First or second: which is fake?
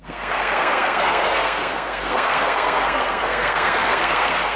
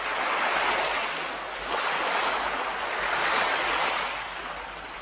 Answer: first